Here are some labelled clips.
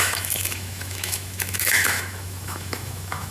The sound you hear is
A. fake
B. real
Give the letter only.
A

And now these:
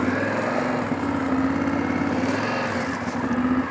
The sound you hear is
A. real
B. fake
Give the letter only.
A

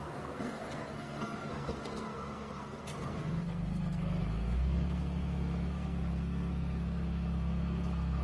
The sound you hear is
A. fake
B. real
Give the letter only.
A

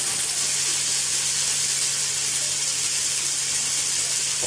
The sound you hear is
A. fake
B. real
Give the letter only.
B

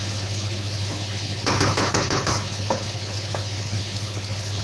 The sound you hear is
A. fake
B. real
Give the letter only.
A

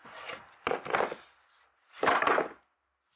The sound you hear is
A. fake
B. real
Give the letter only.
B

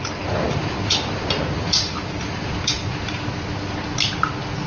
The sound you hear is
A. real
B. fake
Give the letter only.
A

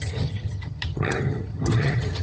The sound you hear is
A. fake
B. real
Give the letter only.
A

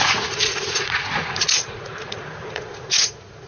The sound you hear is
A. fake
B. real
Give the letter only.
A